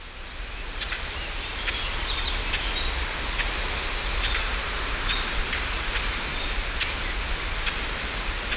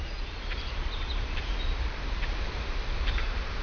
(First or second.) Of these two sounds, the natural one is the first